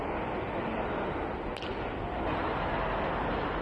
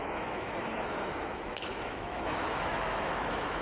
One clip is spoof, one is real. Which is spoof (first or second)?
second